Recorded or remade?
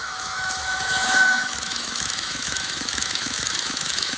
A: remade